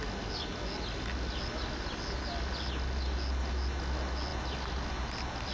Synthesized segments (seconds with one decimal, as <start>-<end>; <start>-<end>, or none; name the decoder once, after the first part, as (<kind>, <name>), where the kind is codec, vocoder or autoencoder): none